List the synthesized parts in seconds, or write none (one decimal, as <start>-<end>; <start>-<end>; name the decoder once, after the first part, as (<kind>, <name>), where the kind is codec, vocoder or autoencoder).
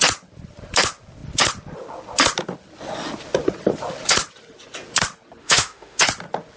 5.4-6.0 (autoencoder, DAC-VAE)